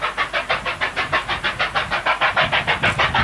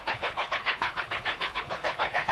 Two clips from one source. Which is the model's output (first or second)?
second